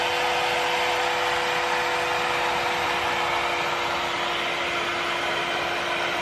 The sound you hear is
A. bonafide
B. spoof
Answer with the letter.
A